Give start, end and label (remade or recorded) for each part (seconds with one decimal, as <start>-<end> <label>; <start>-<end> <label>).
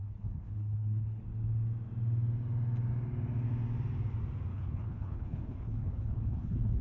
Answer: 0.0-1.2 remade; 1.2-4.5 recorded; 4.5-6.8 remade